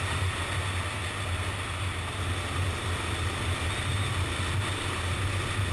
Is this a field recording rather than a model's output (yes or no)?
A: yes